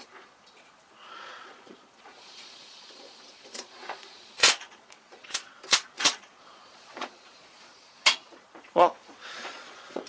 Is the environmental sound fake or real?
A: fake